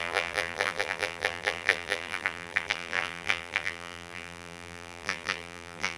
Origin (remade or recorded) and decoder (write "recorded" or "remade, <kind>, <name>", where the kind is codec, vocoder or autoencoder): remade, vocoder, BigVGAN v2